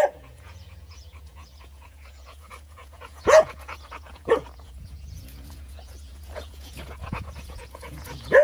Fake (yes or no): yes